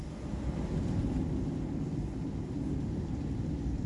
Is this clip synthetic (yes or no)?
no